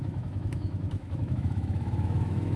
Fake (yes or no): yes